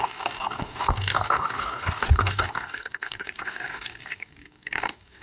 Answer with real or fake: fake